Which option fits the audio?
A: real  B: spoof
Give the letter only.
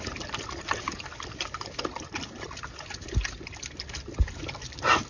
A